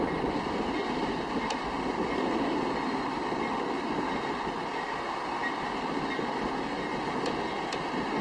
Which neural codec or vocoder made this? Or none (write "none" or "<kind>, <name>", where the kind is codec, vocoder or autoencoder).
none